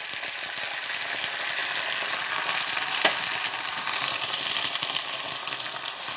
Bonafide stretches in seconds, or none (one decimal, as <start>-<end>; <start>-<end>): 0.0-1.6; 5.3-6.2